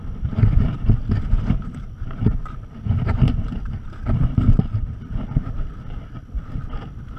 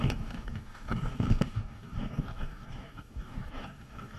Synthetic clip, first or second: second